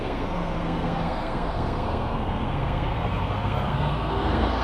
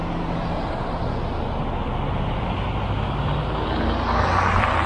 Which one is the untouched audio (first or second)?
second